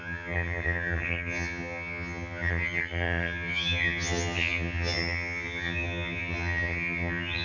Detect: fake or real fake